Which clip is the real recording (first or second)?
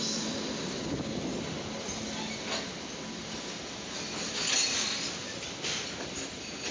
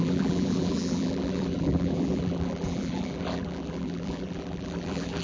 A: first